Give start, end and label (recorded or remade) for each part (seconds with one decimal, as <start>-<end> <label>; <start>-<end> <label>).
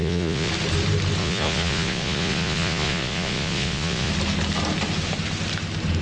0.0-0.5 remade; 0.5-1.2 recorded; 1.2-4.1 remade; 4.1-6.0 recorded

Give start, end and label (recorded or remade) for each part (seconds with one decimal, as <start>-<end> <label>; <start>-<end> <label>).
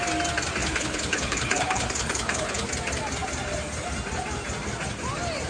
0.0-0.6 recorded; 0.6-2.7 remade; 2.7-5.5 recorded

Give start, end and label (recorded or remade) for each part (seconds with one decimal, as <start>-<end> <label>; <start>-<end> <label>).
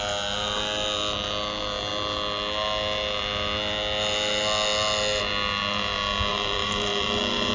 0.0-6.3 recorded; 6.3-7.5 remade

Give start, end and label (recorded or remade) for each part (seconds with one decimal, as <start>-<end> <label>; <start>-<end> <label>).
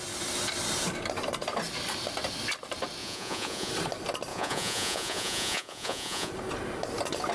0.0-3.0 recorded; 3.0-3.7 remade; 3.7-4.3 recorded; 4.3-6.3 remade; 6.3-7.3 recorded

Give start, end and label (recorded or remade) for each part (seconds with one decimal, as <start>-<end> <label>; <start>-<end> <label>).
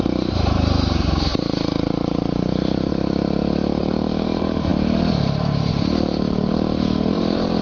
0.0-2.9 remade; 2.9-3.8 recorded; 3.8-7.6 remade